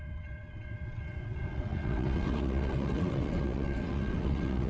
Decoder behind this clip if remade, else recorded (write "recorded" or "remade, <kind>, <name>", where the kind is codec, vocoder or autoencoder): remade, vocoder, WaveNeXt